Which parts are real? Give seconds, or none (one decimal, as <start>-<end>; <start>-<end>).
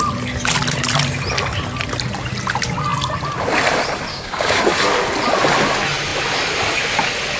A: 0.0-4.1; 4.6-7.4